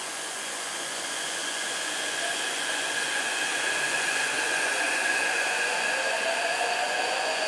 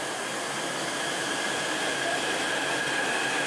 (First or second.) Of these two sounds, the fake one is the first